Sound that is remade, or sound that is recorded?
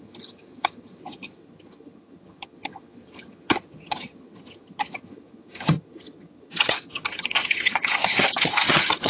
remade